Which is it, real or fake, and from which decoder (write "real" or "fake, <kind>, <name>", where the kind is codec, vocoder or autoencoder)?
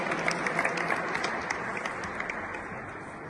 real